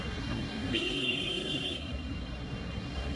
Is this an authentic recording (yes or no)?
no